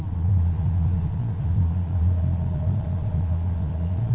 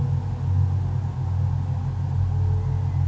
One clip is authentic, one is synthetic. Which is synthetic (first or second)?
first